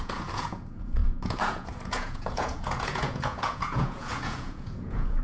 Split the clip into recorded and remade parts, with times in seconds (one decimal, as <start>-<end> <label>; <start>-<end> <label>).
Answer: 0.0-5.2 remade